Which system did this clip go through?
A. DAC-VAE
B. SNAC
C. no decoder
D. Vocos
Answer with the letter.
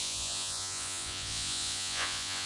D